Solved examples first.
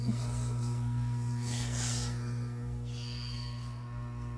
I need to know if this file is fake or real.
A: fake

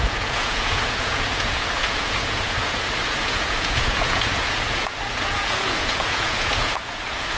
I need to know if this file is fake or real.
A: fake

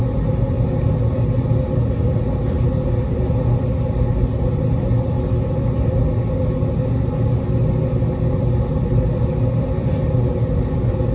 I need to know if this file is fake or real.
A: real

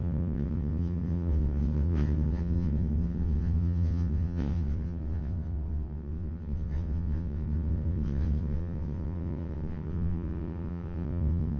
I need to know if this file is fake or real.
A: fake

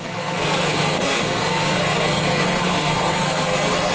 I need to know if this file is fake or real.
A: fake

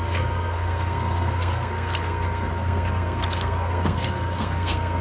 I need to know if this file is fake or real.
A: fake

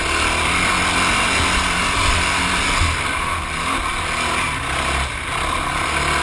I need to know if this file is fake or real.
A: real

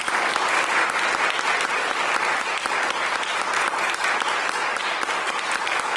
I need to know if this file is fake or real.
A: real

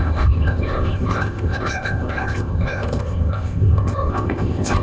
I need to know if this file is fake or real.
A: fake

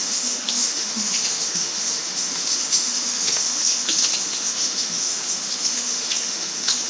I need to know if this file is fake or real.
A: fake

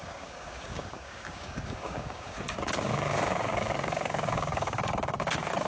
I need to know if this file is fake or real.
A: fake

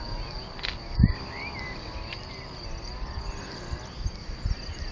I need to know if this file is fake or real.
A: real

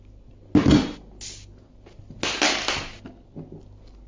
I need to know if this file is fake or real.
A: real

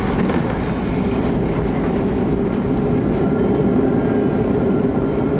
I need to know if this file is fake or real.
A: real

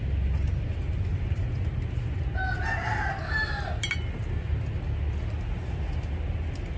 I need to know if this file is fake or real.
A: real